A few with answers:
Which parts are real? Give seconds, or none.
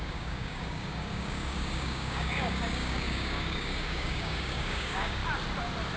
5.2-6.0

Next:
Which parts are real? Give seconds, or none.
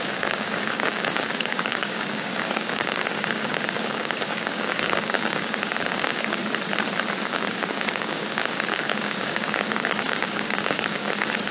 6.4-7.2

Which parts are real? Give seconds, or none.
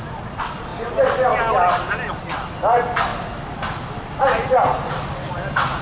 0.0-5.8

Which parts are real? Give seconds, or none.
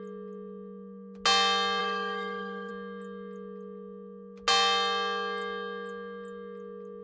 0.0-1.8; 2.7-7.0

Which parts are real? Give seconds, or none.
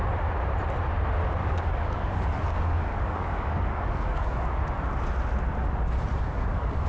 0.0-1.4; 4.6-6.1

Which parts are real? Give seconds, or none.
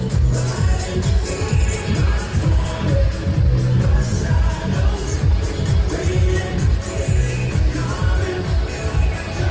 0.0-2.3; 2.9-9.5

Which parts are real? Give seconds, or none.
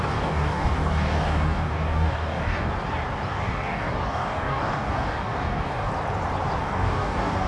2.7-3.3; 5.9-6.6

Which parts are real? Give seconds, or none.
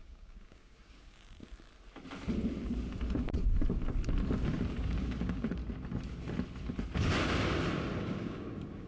1.4-4.7; 5.6-8.0